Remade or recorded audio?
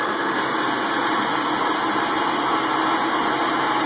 recorded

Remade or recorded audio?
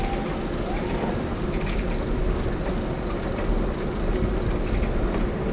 recorded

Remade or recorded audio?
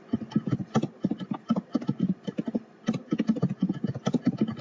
recorded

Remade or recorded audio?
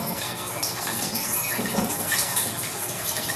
remade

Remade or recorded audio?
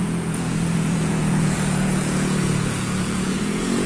remade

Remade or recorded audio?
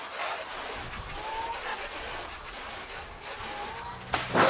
recorded